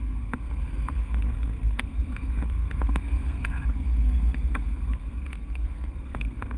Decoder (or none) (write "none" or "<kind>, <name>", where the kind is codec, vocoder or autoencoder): codec, SNAC